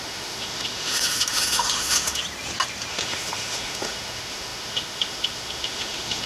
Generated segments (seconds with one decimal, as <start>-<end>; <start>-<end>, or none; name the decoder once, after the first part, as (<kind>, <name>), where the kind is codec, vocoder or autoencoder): 0.0-2.2 (autoencoder, DAC-VAE); 2.9-6.3